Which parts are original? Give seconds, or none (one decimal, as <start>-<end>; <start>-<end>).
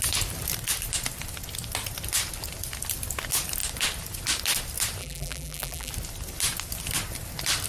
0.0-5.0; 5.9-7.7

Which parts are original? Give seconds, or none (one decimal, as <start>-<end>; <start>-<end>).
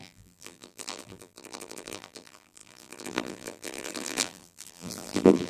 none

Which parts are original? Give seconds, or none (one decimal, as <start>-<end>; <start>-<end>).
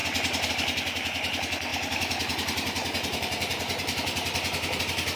0.0-1.7; 4.8-5.2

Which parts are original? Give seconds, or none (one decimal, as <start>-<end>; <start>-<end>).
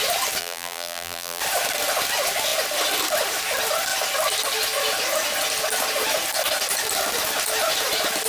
0.0-0.4; 1.4-8.3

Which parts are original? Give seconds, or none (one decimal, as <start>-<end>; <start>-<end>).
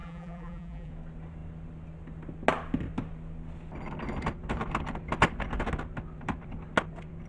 0.9-7.3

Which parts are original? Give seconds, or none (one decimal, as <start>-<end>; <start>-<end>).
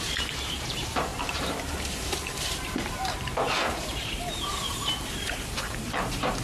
none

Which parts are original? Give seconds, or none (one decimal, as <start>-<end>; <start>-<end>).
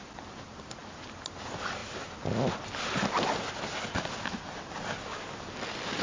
0.0-6.0